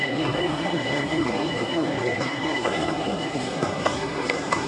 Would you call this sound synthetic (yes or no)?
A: yes